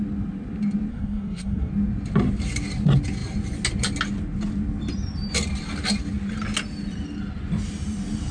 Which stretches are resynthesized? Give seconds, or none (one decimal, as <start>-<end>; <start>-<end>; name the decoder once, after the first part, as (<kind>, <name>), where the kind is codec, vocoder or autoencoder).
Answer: 0.9-1.7 (codec, SNAC)